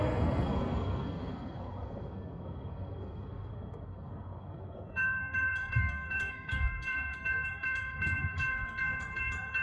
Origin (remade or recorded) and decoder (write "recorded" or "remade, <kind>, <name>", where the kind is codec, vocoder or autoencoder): remade, codec, SNAC